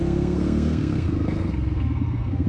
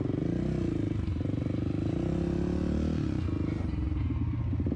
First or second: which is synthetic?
first